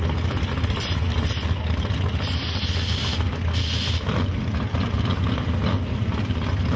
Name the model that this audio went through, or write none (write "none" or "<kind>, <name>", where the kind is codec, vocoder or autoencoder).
none